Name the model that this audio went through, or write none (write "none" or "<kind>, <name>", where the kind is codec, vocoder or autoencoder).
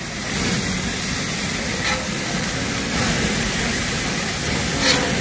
none